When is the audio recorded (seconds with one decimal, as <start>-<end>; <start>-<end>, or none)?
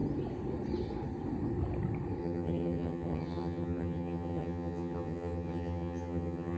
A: 0.0-2.2